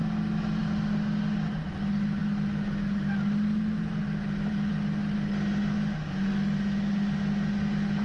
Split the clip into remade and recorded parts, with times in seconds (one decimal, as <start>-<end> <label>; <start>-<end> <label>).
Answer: 0.0-8.0 recorded